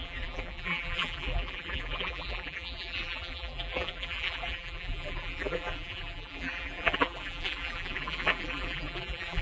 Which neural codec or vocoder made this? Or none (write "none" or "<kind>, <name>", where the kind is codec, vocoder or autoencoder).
vocoder, BigVGAN v2